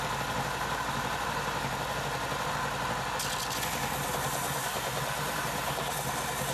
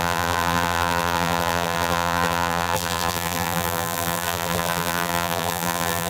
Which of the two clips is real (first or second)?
first